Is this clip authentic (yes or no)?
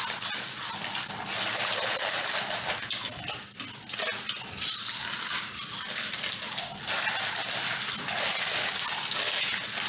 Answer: yes